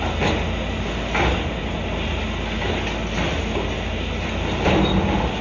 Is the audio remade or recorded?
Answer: recorded